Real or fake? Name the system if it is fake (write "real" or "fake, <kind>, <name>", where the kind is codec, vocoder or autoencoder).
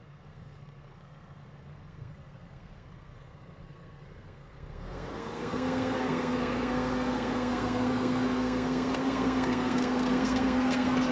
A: fake, codec, SNAC